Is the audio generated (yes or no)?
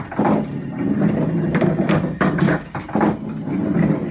no